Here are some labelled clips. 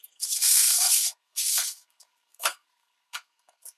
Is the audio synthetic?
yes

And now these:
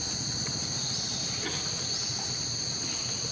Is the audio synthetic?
no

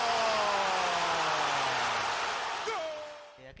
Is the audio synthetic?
no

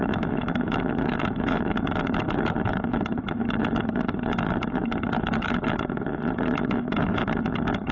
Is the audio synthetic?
yes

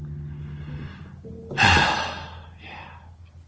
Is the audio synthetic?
no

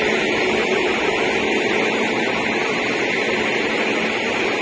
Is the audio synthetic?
no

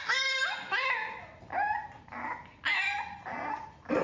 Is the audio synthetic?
no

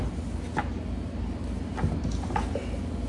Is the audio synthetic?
no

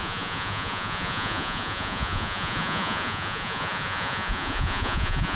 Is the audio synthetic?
yes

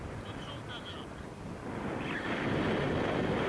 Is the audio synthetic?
no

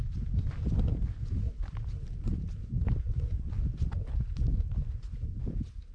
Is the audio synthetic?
no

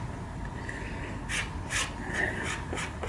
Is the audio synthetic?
no